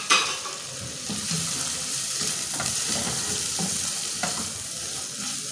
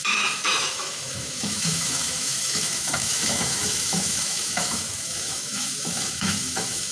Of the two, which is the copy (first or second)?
second